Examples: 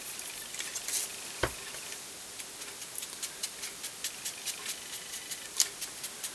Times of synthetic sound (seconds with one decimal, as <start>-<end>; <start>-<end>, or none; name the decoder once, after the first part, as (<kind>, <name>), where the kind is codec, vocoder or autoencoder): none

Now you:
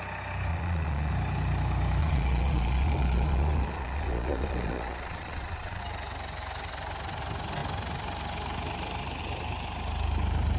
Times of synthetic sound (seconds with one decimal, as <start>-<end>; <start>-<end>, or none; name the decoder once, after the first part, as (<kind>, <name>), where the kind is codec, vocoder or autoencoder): 0.5-1.1 (vocoder, Vocos); 2.0-5.8

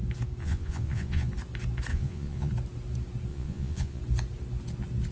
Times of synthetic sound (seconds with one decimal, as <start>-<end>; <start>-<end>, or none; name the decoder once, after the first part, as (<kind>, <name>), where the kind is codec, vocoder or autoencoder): 0.4-1.3 (vocoder, Vocos); 1.9-2.5; 3.3-4.0

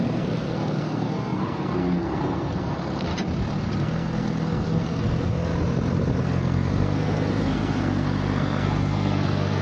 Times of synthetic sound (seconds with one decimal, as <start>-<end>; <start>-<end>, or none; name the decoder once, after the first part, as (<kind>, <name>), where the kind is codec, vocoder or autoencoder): 0.0-3.1 (codec, SNAC); 3.8-5.5; 6.2-9.6

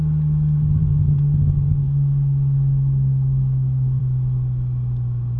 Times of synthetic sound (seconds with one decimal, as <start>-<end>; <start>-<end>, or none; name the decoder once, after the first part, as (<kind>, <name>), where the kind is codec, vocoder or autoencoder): 0.8-4.0 (codec, DAC)

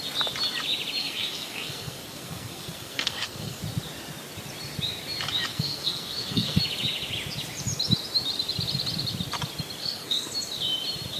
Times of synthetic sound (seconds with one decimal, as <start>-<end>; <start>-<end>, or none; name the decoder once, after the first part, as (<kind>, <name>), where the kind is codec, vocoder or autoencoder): 1.0-3.6 (codec, SNAC); 5.5-6.6; 9.8-10.3

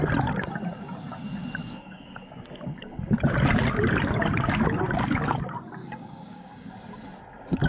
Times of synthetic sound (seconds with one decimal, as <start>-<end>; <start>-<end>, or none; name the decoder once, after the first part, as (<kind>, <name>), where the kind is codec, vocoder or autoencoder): 1.6-2.6 (codec, DAC); 5.8-6.7